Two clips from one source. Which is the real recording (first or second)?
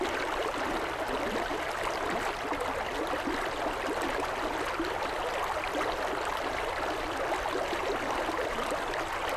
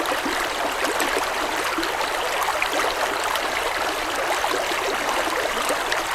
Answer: first